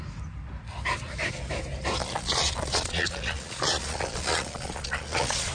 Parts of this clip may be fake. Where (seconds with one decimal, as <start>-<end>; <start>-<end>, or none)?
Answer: 2.0-5.5

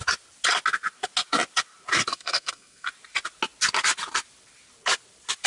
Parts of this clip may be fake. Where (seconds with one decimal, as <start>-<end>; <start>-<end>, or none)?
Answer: 2.1-2.9